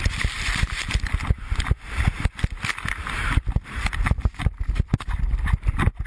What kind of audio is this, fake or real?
real